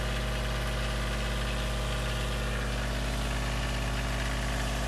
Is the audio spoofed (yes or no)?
no